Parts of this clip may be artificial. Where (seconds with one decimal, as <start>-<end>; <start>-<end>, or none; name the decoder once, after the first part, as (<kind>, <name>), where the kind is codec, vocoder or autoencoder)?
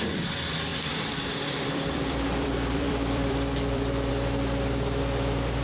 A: 0.7-4.1 (vocoder, BigVGAN v2)